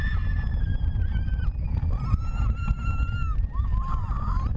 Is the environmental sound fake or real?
real